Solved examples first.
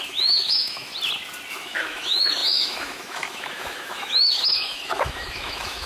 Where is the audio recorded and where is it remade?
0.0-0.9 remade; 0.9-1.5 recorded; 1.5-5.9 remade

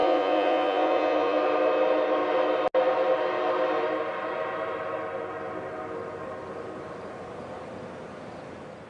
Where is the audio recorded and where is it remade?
0.0-1.4 remade; 1.4-8.9 recorded

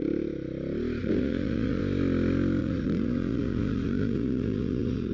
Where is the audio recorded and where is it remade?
0.0-1.0 recorded; 1.0-1.8 remade; 1.8-2.6 recorded; 2.6-5.1 remade

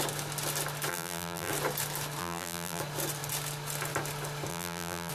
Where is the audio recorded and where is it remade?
0.0-0.9 recorded; 0.9-1.5 remade; 1.5-2.2 recorded; 2.2-2.8 remade; 2.8-4.5 recorded; 4.5-5.1 remade

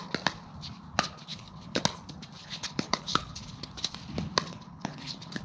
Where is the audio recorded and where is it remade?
0.0-1.3 recorded; 1.3-1.8 remade; 1.8-2.4 recorded; 2.4-3.7 remade; 3.7-4.5 recorded; 4.5-5.4 remade

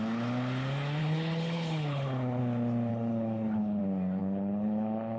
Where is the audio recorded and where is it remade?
0.0-1.0 recorded; 1.0-2.4 remade; 2.4-2.9 recorded; 2.9-3.8 remade; 3.8-4.2 recorded; 4.2-5.2 remade

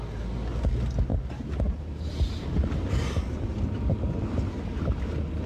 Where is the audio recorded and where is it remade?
0.0-5.5 recorded